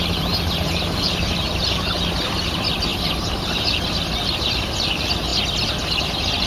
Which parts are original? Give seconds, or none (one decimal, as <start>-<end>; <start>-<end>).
5.3-6.0